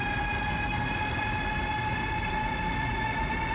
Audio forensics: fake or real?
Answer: real